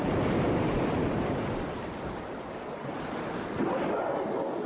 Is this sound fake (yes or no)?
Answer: no